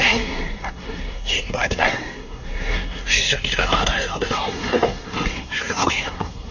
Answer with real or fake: fake